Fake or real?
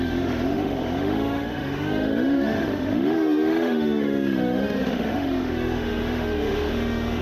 fake